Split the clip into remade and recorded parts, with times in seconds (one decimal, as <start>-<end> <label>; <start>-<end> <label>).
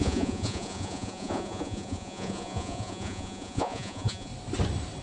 0.0-4.3 remade; 4.3-5.0 recorded